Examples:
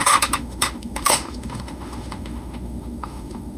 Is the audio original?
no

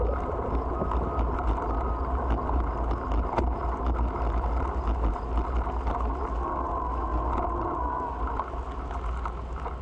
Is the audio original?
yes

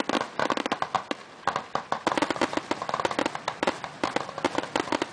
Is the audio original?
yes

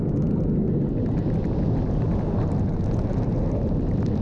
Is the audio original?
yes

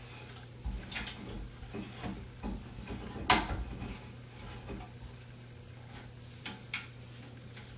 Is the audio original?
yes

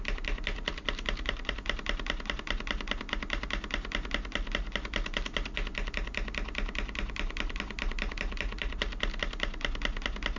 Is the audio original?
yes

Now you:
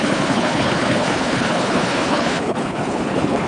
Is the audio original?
no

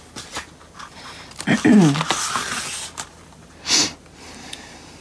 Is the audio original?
yes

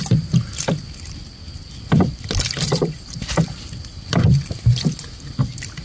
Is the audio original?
yes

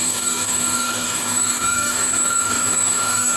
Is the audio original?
no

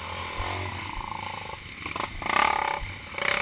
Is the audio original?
yes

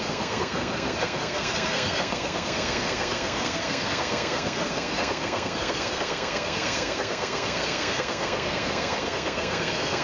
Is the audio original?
no